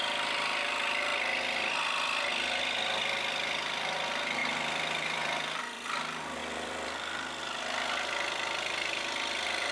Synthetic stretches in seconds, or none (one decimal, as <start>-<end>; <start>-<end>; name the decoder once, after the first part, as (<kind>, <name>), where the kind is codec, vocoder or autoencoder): 0.0-1.1 (vocoder, BigVGAN v2); 3.0-9.7